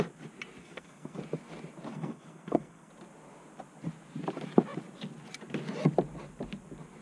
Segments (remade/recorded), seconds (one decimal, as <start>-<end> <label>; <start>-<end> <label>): 0.0-0.6 recorded; 0.6-1.2 remade; 1.2-1.9 recorded; 1.9-2.9 remade; 2.9-7.0 recorded